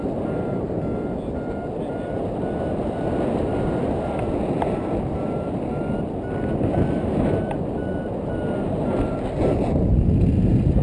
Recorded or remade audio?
recorded